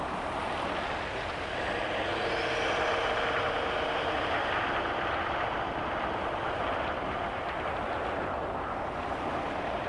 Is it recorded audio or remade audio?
recorded